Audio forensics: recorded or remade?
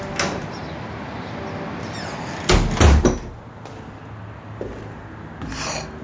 recorded